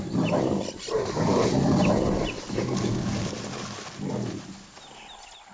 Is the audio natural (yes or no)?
yes